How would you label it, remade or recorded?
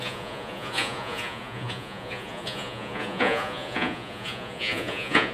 remade